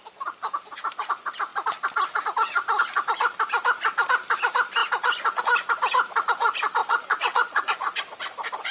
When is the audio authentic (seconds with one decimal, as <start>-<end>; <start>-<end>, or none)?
0.0-6.8; 8.2-8.7